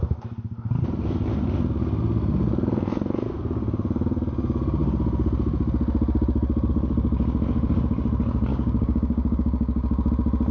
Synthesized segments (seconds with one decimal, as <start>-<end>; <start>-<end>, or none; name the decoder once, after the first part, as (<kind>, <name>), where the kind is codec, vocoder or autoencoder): 8.5-10.1 (codec, DAC)

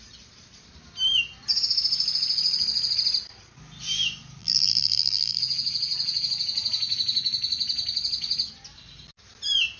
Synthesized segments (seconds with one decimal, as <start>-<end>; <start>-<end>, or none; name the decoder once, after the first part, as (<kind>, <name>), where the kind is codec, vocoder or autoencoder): 4.4-5.4 (vocoder, BigVGAN v2)

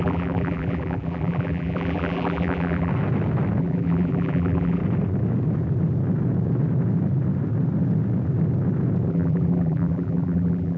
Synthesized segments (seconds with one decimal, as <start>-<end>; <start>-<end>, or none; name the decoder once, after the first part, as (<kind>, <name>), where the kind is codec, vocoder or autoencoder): 0.0-2.9 (vocoder, BigVGAN v2); 3.6-4.8; 9.1-10.8